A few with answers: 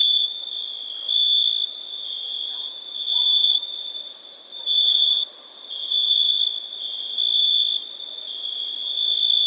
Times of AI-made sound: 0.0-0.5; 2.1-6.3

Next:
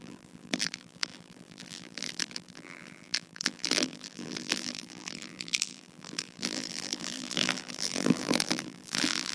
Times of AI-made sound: 0.0-9.3